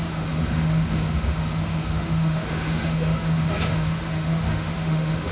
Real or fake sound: fake